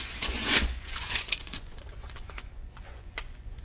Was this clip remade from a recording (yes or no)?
yes